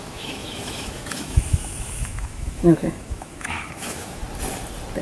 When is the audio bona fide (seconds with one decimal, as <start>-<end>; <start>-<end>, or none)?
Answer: 4.2-5.0